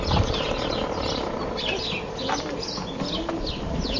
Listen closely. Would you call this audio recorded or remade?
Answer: recorded